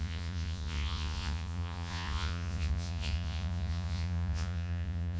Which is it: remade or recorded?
remade